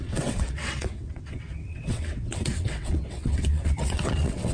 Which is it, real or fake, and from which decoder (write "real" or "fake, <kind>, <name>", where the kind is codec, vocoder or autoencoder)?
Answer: fake, vocoder, WaveNeXt